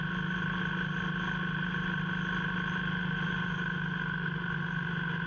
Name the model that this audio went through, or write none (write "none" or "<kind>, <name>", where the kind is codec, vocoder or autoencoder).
none